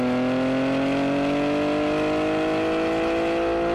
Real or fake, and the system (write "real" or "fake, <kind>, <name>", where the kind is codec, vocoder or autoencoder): real